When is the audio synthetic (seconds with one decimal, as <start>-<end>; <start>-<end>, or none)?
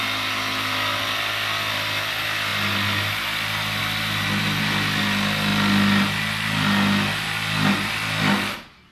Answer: none